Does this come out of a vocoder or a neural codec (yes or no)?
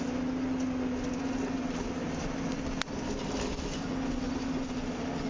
no